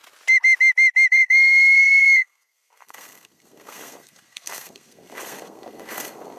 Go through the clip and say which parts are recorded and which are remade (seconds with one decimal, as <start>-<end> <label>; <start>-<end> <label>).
0.0-1.1 recorded; 1.1-6.4 remade